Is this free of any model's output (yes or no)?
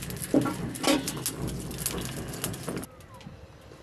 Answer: yes